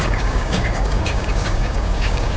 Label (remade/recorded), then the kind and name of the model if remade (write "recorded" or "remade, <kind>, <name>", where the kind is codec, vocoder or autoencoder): remade, codec, DAC